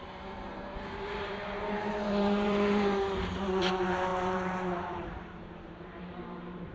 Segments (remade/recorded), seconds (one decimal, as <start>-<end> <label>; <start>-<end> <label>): 0.0-6.7 remade